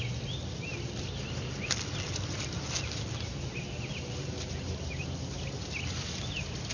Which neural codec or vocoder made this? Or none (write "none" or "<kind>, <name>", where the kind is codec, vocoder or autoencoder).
none